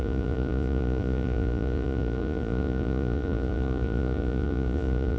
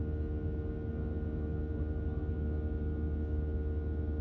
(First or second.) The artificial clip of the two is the first